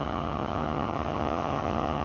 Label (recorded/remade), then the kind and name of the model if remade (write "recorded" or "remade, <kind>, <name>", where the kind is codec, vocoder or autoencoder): remade, vocoder, HiFi-GAN